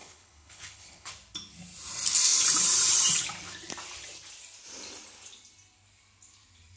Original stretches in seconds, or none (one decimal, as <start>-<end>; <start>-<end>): 1.1-6.8